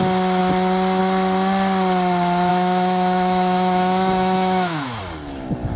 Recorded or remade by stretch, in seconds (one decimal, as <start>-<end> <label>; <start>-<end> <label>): 0.0-2.5 recorded; 2.5-5.0 remade; 5.0-5.8 recorded